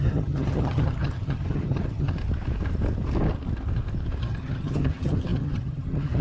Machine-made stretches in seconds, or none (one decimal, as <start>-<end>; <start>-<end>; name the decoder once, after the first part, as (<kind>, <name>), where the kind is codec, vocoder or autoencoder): 0.0-2.2 (vocoder, HiFi-GAN); 4.2-6.2